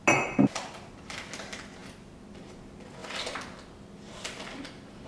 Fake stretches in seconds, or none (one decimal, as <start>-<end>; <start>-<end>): none